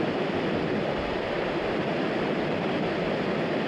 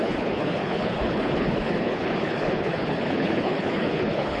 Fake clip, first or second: second